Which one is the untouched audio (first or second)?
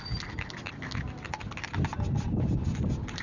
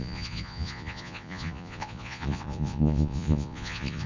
first